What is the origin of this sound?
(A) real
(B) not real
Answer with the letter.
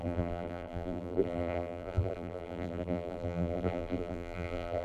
B